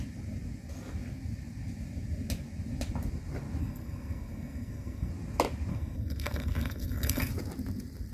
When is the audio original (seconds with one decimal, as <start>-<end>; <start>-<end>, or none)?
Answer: 0.0-3.6; 5.1-5.7; 7.3-8.1